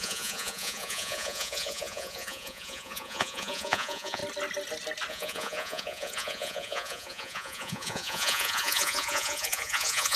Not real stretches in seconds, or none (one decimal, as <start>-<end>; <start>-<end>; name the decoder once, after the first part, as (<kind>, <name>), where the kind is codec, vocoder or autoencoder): 0.0-4.2 (vocoder, Vocos); 5.1-10.2